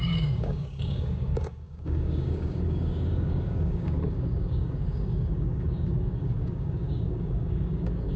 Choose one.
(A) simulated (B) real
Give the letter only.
A